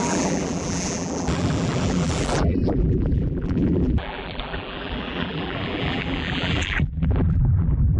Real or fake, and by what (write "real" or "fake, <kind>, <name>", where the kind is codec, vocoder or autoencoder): fake, vocoder, BigVGAN v2